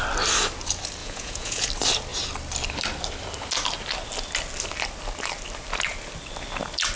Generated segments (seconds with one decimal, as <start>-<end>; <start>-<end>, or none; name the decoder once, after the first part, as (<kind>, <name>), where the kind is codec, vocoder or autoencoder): 1.0-1.7 (vocoder, Vocos)